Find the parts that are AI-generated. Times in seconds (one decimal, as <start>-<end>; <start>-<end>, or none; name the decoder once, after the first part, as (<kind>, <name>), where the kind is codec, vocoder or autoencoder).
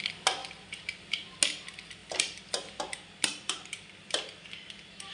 0.4-1.3 (vocoder, BigVGAN v2); 2.0-5.1